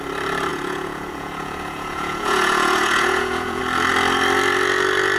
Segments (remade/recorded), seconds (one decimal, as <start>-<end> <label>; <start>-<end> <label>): 0.0-0.5 recorded; 0.5-3.6 remade; 3.6-5.2 recorded